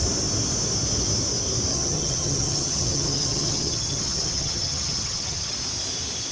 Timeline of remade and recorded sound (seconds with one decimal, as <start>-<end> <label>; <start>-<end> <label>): 0.0-1.7 recorded; 1.7-5.5 remade; 5.5-6.3 recorded